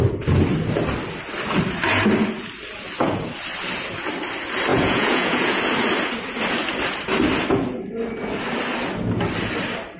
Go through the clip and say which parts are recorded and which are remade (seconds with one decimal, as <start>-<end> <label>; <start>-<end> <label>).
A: 0.0-4.7 recorded; 4.7-5.6 remade; 5.6-10.0 recorded